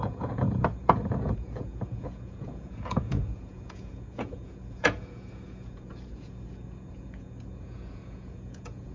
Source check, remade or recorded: remade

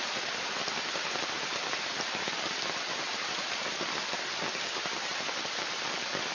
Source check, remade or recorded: recorded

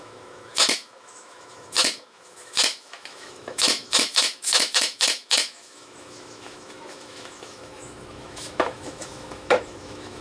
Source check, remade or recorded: remade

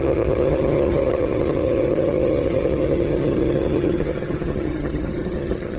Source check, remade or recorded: remade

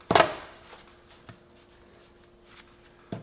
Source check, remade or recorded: recorded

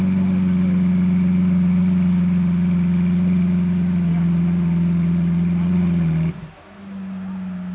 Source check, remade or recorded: recorded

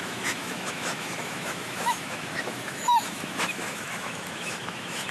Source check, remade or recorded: remade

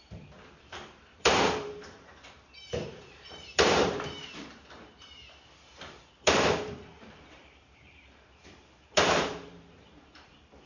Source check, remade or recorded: remade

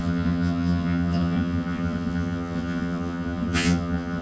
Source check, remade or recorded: remade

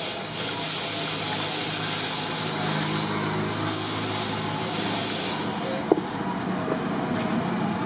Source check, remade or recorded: recorded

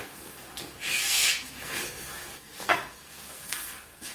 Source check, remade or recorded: remade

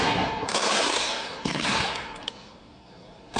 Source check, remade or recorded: remade